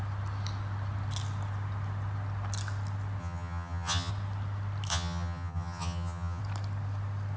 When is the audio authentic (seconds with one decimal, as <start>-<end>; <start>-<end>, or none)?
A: 0.0-3.2; 4.1-4.9; 6.4-7.4